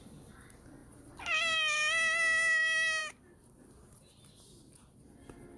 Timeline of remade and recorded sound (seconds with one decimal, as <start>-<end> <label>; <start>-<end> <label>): 0.0-5.6 recorded